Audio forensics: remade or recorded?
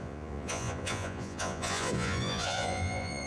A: remade